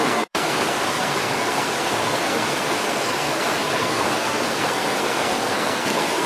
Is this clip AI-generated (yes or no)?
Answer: yes